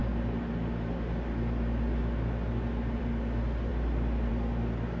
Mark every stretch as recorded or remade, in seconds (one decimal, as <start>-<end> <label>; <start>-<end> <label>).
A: 0.0-5.0 recorded